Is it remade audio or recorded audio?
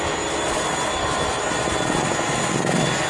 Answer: recorded